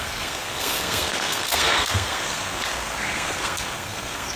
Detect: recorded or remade remade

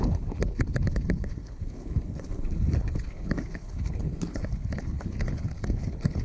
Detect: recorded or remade remade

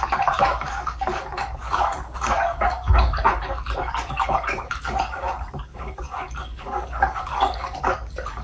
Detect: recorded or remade remade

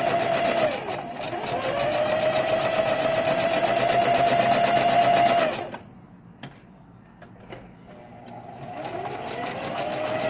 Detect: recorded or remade recorded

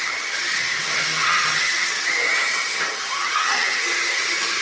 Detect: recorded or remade remade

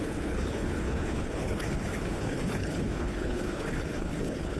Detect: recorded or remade remade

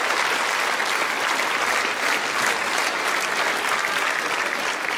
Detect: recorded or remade recorded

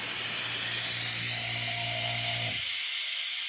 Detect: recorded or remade recorded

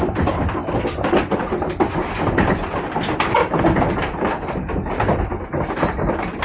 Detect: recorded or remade remade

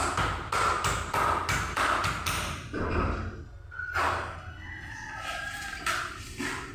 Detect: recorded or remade recorded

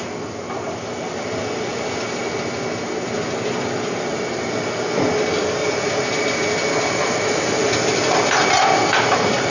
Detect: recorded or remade recorded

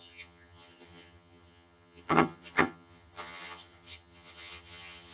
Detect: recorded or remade remade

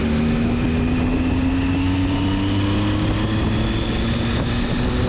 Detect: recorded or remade recorded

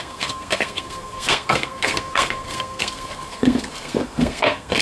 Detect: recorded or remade remade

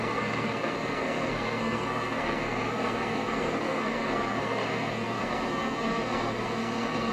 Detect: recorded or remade remade